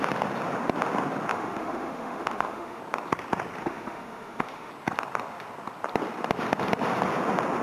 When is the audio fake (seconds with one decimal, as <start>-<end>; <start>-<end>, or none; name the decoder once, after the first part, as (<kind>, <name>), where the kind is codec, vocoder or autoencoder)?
1.3-2.8 (autoencoder, DAC-VAE); 3.6-4.7